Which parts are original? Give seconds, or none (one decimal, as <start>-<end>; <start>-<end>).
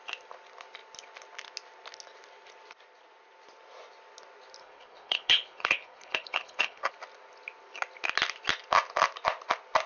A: 0.0-4.6; 6.9-9.9